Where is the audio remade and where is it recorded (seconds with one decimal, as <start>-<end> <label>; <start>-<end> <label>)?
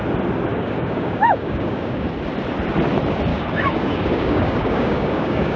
0.0-0.5 recorded; 0.5-2.1 remade; 2.1-3.3 recorded; 3.3-5.6 remade